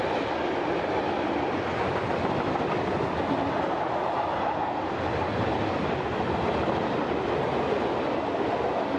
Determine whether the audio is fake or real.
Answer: real